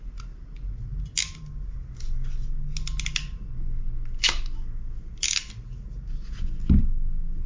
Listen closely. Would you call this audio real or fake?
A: real